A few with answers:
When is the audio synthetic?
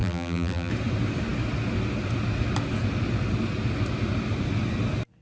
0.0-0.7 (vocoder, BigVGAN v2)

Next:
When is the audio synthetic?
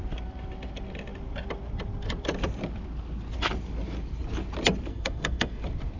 4.9-5.6 (codec, SNAC)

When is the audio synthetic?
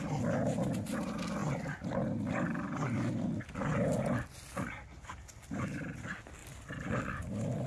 none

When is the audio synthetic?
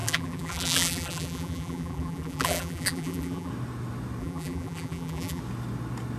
0.0-3.5 (vocoder, BigVGAN v2); 4.2-5.4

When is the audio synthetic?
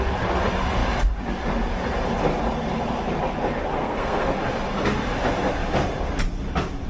3.6-4.4 (codec, SNAC)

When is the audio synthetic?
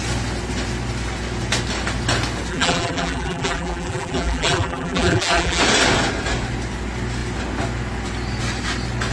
2.5-5.6 (vocoder, BigVGAN v2)